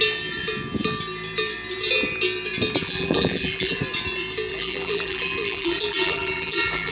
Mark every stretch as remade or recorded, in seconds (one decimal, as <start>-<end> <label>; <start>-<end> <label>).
0.0-2.8 recorded; 2.8-3.8 remade; 3.8-4.5 recorded; 4.5-6.9 remade